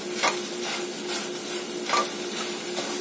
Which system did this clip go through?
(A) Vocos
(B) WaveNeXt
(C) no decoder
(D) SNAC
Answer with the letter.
C